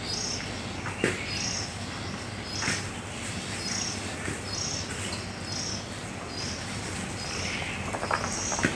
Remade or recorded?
recorded